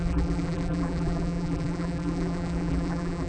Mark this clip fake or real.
fake